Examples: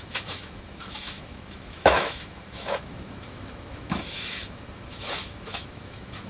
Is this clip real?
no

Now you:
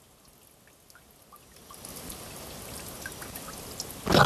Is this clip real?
yes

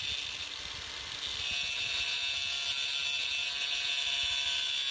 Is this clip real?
yes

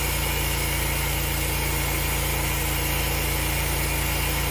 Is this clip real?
yes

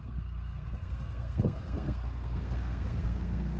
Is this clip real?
no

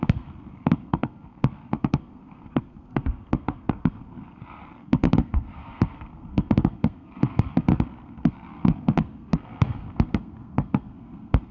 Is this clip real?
no